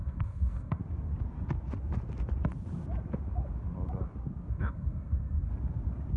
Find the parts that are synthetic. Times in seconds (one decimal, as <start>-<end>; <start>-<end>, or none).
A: 0.0-0.8; 4.5-5.5